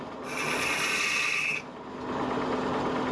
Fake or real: real